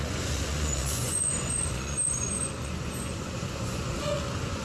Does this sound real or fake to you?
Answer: fake